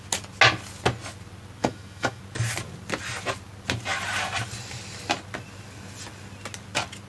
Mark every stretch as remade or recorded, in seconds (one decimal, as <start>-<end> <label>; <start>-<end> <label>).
0.0-1.6 recorded; 1.6-2.2 remade; 2.2-7.1 recorded